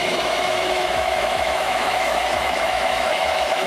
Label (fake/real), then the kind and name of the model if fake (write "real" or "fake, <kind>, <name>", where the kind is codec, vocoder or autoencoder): fake, autoencoder, DAC-VAE